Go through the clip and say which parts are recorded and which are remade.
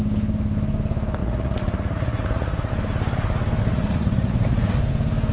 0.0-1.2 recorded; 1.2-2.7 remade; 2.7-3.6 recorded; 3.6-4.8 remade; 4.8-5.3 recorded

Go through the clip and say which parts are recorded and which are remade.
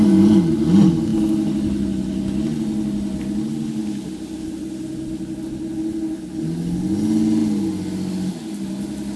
0.0-9.2 recorded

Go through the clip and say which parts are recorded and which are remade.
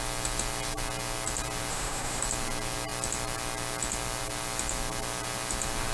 0.0-1.7 recorded; 1.7-2.2 remade; 2.2-5.9 recorded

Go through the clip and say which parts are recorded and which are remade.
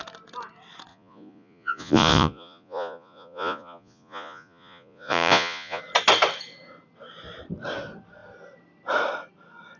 0.0-0.9 recorded; 0.9-5.8 remade; 5.8-9.8 recorded